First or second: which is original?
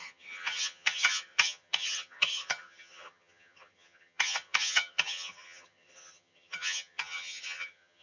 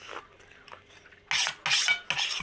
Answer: second